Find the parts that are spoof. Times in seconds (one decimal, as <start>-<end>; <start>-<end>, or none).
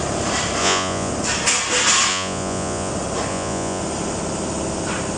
0.6-1.1; 2.1-2.9; 3.3-3.8